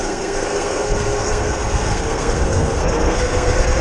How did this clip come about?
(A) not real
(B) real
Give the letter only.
A